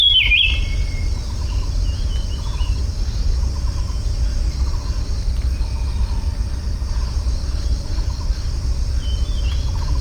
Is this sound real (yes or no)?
yes